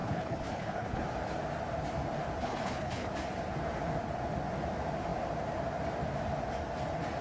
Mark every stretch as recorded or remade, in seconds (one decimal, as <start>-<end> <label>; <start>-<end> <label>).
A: 0.0-1.0 remade; 1.0-2.4 recorded; 2.4-3.1 remade; 3.1-7.2 recorded